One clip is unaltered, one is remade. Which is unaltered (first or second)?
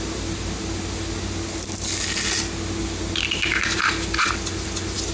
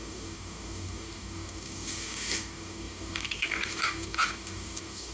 first